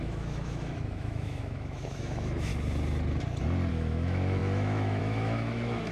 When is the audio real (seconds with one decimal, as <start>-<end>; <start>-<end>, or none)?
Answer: 2.5-3.7

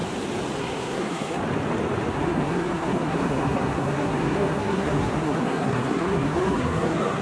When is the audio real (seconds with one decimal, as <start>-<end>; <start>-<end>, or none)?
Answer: 0.0-0.6; 1.4-2.1

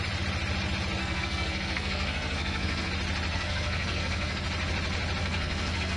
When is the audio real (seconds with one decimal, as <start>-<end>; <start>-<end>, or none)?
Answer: 0.0-1.0; 2.9-3.3; 4.4-5.2

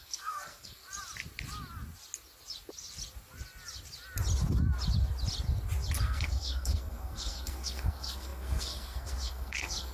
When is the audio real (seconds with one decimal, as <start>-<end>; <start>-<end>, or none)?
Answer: 0.8-6.0

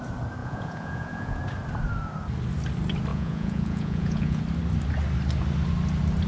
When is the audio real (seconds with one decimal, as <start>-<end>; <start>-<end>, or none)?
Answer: 0.0-0.4; 1.4-3.1; 4.4-6.3

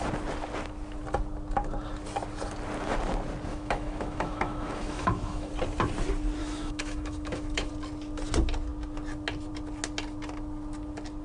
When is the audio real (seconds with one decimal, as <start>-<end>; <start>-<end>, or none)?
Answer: 0.0-3.5; 5.5-6.4; 7.7-11.2